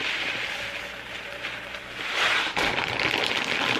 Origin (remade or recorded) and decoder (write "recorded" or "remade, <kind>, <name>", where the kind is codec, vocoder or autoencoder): recorded